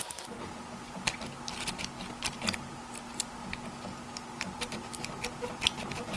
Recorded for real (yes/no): yes